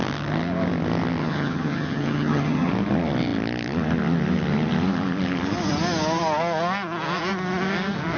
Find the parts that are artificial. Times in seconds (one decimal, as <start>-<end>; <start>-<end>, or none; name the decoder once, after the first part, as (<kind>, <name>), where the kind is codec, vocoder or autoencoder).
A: 1.2-2.7 (vocoder, HiFi-GAN)